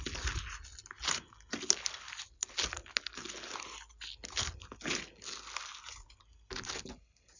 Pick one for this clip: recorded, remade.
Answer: recorded